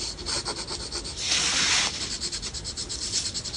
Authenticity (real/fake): real